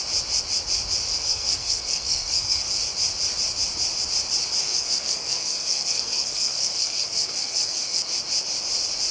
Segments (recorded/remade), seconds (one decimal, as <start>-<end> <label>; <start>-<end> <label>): 0.0-1.1 recorded; 1.1-2.7 remade; 2.7-4.6 recorded; 4.6-8.0 remade; 8.0-9.1 recorded